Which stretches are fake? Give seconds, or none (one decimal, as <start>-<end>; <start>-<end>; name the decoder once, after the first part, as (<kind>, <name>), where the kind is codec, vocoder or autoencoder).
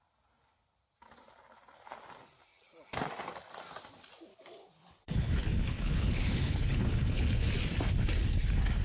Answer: 4.3-7.6 (codec, HILCodec)